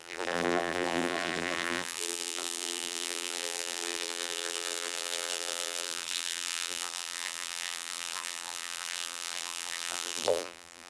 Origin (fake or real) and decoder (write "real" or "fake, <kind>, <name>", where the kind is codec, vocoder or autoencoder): fake, vocoder, BigVGAN v2